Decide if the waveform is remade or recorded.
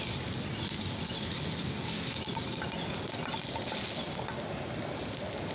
recorded